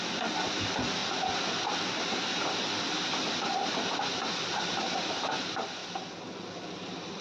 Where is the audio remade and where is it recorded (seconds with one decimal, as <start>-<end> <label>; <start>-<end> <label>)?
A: 0.0-1.0 recorded; 1.0-5.1 remade; 5.1-5.8 recorded; 5.8-7.2 remade